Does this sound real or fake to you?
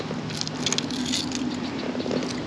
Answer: real